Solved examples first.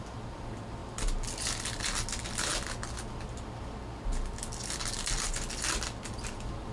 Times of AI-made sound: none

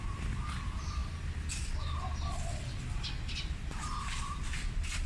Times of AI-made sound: 0.0-1.0 (vocoder, BigVGAN v2); 4.0-5.1

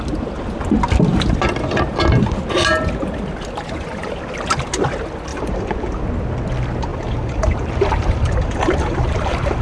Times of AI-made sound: 5.3-6.0 (vocoder, BigVGAN v2); 6.9-9.6

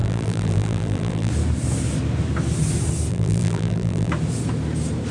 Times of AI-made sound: 0.0-1.3 (vocoder, BigVGAN v2); 3.1-4.1

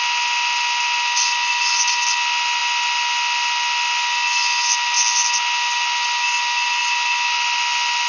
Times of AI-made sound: none

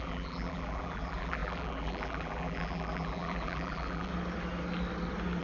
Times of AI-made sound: 0.0-4.1 (vocoder, BigVGAN v2)

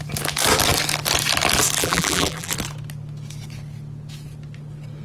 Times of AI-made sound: 1.8-2.5 (vocoder, BigVGAN v2)